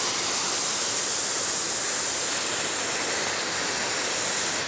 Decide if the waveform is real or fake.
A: real